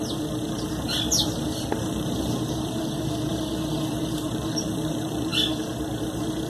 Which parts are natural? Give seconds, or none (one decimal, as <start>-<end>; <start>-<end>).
1.2-1.8; 5.3-6.0